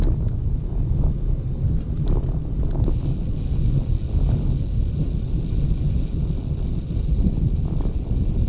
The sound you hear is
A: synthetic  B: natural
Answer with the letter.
B